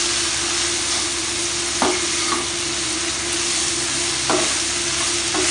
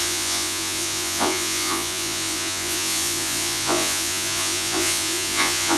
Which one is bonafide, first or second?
first